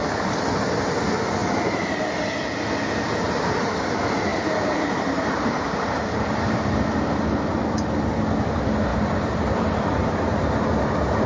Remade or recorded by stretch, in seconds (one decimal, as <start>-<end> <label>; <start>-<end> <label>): 0.0-4.3 recorded; 4.3-7.7 remade; 7.7-8.9 recorded; 8.9-10.4 remade; 10.4-11.3 recorded